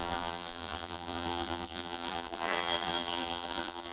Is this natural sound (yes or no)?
no